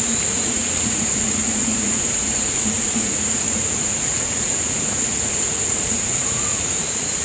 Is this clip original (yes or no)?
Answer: no